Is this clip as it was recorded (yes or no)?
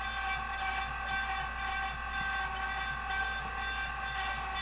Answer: yes